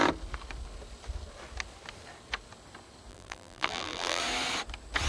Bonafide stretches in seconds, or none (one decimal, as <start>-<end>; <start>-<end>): 0.0-3.1; 4.2-5.1